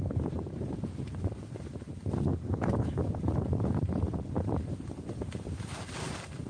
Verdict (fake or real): fake